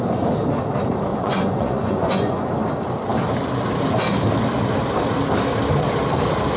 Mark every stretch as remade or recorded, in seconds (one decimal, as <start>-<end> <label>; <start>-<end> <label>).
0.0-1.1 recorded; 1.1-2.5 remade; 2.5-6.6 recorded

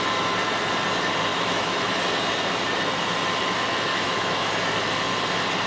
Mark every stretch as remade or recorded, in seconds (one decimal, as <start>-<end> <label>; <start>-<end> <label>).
0.0-1.3 recorded; 1.3-2.0 remade; 2.0-3.9 recorded; 3.9-4.5 remade; 4.5-5.7 recorded

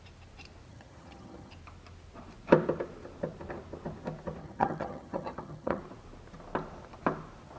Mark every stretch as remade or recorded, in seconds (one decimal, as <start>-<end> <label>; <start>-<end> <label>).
0.0-0.7 recorded; 0.7-1.5 remade; 1.5-4.4 recorded; 4.4-5.8 remade; 5.8-7.6 recorded